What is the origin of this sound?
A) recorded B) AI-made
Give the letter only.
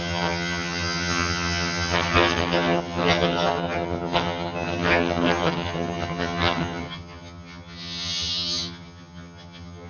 B